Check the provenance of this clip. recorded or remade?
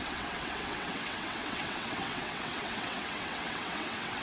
remade